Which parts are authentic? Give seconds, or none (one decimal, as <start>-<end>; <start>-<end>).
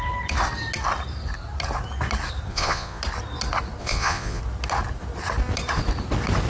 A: 0.0-2.5; 3.0-3.8; 4.4-6.5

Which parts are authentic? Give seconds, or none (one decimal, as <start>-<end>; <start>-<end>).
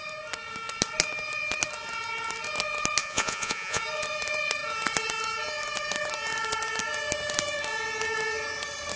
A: 0.0-3.0; 3.8-9.0